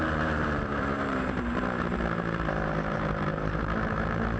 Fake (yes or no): yes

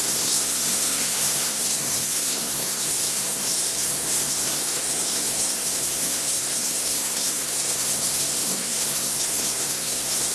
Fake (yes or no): yes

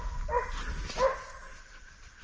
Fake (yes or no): no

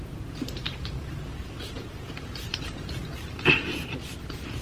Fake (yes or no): yes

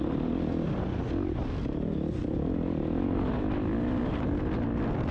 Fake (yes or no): no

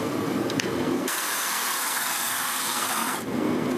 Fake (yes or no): yes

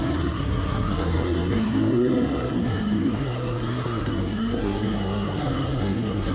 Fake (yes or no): yes